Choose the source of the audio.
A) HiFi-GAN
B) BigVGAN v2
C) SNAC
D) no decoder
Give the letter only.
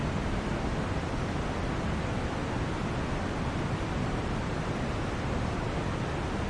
D